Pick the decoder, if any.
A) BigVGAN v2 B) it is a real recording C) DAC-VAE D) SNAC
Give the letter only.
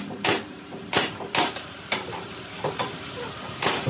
A